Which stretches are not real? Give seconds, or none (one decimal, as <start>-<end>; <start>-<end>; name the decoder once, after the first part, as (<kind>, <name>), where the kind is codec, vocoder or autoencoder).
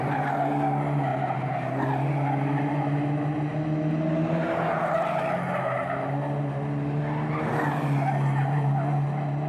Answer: none